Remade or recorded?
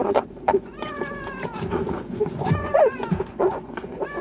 remade